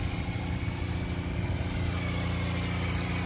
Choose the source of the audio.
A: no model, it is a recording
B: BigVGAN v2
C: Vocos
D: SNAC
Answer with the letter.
A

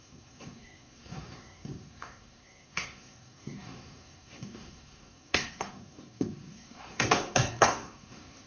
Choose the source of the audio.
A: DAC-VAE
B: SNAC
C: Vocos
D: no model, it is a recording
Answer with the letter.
B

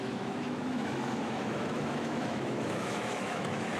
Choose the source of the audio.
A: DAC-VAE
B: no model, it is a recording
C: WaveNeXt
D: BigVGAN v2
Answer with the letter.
A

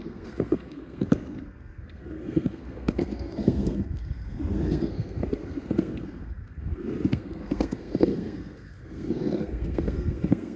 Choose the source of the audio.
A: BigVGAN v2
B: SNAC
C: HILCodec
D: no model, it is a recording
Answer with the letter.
B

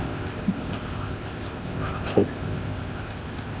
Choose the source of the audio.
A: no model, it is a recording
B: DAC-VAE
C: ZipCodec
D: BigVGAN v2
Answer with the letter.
C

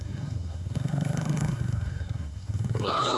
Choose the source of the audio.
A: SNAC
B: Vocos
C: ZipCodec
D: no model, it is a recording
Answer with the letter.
A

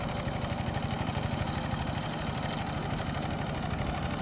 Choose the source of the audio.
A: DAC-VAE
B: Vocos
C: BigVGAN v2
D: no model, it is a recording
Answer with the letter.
C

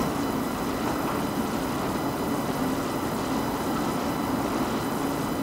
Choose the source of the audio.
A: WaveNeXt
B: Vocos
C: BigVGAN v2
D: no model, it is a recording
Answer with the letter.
D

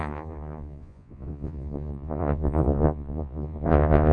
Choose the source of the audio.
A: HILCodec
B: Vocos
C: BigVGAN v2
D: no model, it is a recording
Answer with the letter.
B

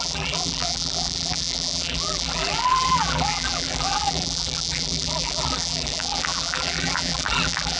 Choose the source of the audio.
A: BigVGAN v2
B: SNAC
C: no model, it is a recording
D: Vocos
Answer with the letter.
A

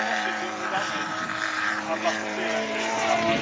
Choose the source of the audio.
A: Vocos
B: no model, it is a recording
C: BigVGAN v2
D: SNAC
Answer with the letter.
C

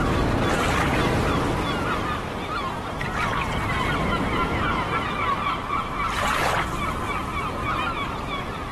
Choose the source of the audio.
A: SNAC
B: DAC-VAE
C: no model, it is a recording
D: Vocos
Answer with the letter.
C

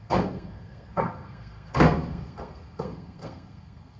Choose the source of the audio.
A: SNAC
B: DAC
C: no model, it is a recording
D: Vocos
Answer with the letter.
A